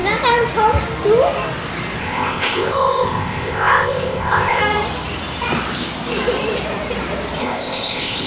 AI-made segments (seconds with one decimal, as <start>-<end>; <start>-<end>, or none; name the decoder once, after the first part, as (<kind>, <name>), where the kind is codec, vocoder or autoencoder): 2.0-4.6 (codec, ZipCodec); 7.4-8.3